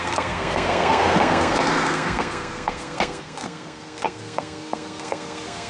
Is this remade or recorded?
remade